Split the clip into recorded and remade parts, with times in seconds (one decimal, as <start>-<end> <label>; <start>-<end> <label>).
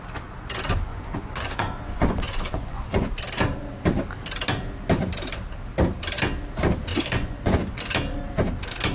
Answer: 0.0-0.9 recorded; 0.9-3.1 remade; 3.1-6.9 recorded; 6.9-7.8 remade; 7.8-8.9 recorded